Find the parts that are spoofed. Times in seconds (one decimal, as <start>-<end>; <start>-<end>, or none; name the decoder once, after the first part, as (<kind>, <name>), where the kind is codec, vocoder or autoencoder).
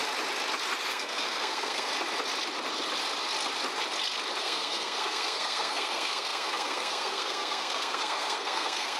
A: 0.9-1.9 (codec, SNAC); 4.4-9.0